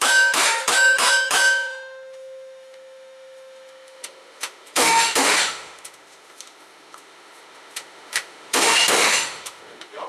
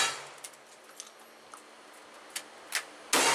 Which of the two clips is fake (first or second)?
first